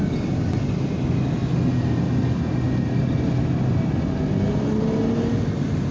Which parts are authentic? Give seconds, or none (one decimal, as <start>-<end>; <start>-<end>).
0.0-5.9